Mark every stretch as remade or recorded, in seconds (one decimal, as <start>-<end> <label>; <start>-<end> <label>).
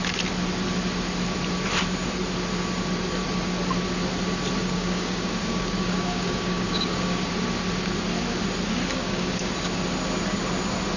0.0-4.6 recorded; 4.6-7.3 remade; 7.3-8.9 recorded; 8.9-9.5 remade; 9.5-11.0 recorded